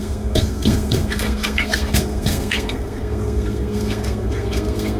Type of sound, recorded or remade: remade